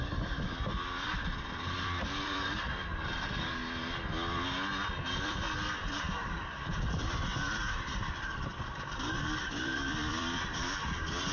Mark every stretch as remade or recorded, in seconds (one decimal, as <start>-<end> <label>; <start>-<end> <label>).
0.0-3.6 remade; 3.6-5.1 recorded; 5.1-11.3 remade